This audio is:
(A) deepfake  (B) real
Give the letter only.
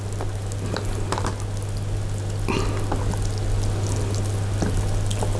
B